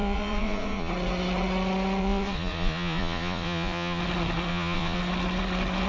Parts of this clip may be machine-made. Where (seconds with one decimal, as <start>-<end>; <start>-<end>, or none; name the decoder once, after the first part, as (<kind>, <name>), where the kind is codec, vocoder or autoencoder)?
0.0-0.9 (vocoder, Vocos); 2.0-4.0; 4.5-5.0